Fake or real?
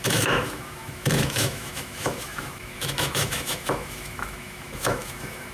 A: fake